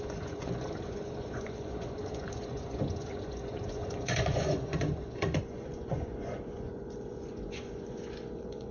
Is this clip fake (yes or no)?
yes